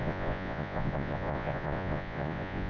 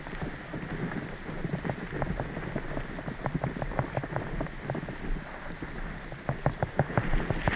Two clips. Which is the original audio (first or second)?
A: second